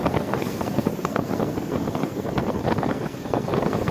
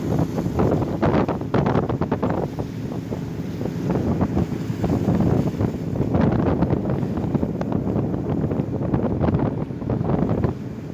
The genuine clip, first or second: second